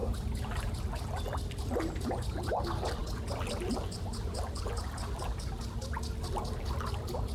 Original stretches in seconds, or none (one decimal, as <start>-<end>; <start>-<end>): 0.0-7.3